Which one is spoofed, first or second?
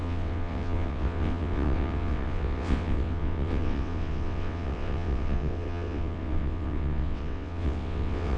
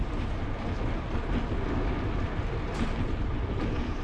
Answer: first